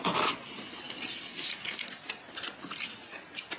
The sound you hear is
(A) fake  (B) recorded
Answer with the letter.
B